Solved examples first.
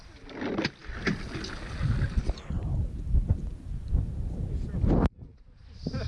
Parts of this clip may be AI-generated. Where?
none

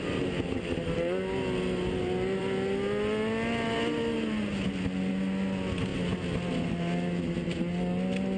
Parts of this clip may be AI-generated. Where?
none

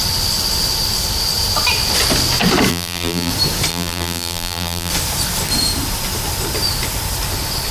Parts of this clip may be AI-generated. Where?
2.7-3.3 (vocoder, BigVGAN v2); 3.7-4.9

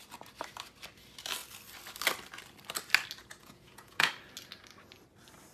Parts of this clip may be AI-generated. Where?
3.4-4.1 (vocoder, Vocos)